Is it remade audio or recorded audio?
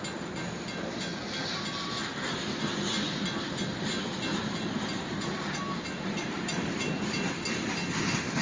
recorded